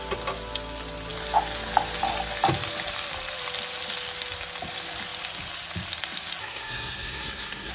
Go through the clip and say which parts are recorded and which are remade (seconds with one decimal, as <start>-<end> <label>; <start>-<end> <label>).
0.0-6.4 recorded; 6.4-7.7 remade